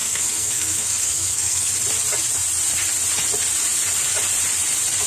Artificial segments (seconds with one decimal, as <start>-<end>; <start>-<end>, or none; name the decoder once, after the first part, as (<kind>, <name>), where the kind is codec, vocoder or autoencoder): 0.0-1.7 (codec, SNAC)